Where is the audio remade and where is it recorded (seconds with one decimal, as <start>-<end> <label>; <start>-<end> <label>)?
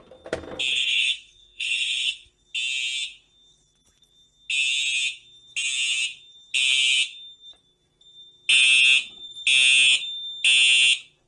0.0-0.7 recorded; 0.7-2.3 remade; 2.3-11.3 recorded